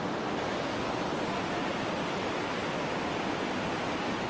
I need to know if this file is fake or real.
real